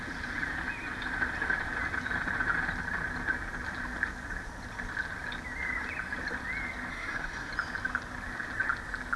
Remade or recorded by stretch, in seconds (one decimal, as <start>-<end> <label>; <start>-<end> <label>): 0.0-6.9 recorded; 6.9-7.5 remade; 7.5-9.2 recorded